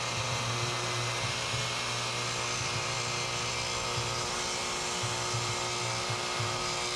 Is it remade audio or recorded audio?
recorded